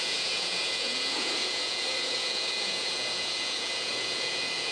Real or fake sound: fake